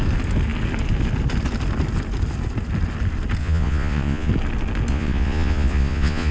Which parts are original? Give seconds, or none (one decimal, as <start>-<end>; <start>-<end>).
0.0-3.4; 4.3-4.9